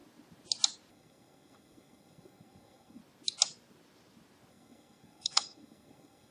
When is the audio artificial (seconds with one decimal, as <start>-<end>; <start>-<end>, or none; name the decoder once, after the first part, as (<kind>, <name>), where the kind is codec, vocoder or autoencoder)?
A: 0.9-3.0 (codec, SNAC); 4.5-6.3